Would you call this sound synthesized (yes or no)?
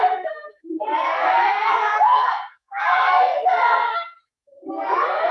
yes